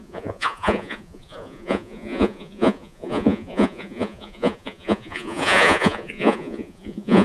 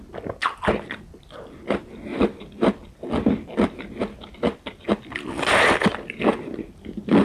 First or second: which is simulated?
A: first